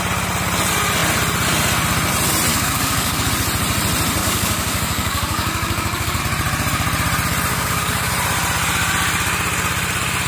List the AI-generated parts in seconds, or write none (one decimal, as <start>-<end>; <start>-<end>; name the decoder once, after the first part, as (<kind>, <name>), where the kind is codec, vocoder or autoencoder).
2.5-3.3 (codec, DAC); 4.2-6.2; 7.5-8.1